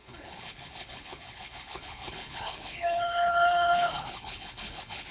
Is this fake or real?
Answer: fake